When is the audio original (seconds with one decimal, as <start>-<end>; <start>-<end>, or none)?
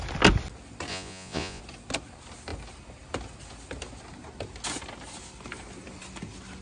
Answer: 0.0-0.9; 1.6-6.6